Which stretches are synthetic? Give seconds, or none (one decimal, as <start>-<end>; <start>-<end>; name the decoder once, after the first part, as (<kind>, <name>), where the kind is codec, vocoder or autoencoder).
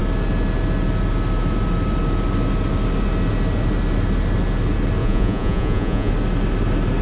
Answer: 5.0-6.1 (vocoder, Vocos)